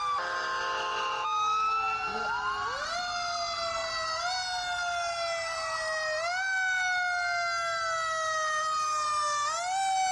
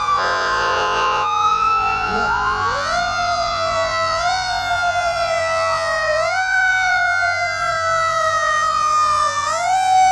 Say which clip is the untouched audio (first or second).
first